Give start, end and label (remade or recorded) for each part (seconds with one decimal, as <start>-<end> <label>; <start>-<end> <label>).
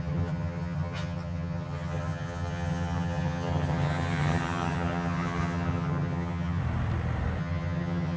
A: 0.0-6.6 remade; 6.6-7.4 recorded; 7.4-8.2 remade